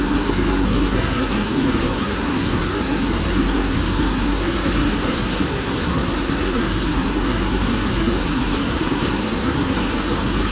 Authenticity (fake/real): fake